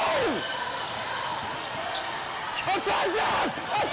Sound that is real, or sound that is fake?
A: real